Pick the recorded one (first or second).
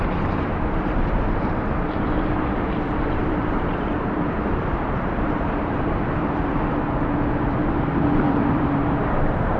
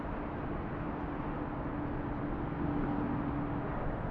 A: second